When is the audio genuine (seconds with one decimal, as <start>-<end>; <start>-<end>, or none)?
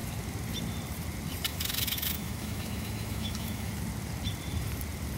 0.0-1.5; 3.7-5.2